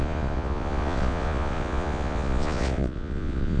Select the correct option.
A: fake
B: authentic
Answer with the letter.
A